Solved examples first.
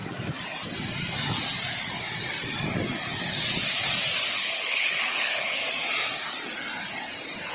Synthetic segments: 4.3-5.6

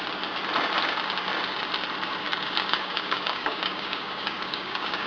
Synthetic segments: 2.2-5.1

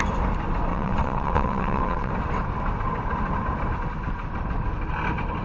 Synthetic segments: 0.7-2.1